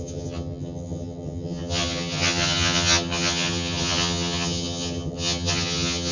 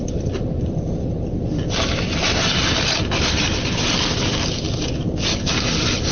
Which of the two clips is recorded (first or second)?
second